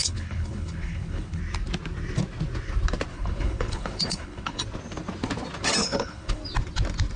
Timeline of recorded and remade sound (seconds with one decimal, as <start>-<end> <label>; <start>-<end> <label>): 0.0-1.4 remade; 1.4-3.1 recorded; 3.1-4.6 remade; 4.6-5.8 recorded; 5.8-6.4 remade; 6.4-7.2 recorded